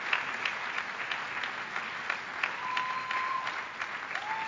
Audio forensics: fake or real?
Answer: real